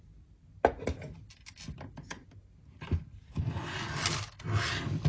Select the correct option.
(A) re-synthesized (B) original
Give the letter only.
B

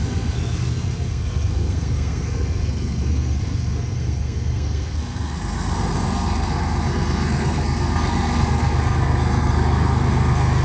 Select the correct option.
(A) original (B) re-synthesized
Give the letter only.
B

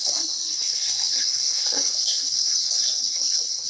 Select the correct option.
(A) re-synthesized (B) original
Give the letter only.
A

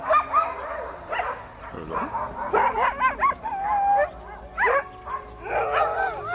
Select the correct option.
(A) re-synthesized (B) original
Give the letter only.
B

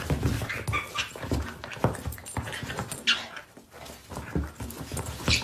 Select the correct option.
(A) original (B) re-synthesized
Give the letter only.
A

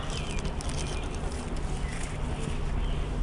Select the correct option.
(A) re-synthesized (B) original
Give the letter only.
B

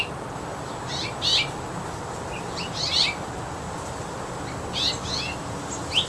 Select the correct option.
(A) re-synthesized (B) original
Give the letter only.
B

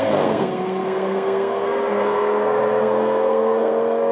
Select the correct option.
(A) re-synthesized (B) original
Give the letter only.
A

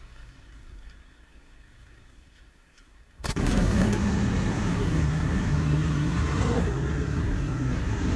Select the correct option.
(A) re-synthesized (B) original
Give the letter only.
A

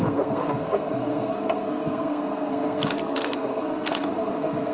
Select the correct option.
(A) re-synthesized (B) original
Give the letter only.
A